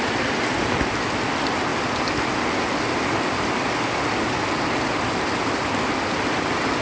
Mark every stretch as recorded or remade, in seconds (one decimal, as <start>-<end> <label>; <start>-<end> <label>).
0.0-6.8 recorded